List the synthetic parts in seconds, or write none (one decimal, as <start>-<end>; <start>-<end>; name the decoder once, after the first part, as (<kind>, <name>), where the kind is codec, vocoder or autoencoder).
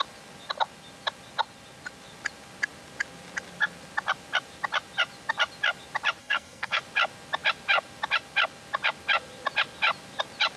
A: 6.2-6.8 (codec, SNAC)